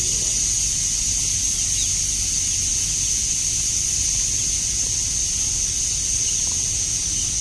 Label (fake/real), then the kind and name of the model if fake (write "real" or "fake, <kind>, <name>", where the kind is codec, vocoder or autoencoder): real